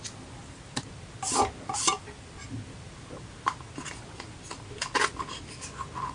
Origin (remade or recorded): recorded